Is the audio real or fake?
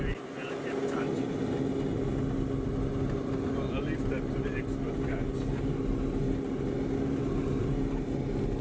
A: real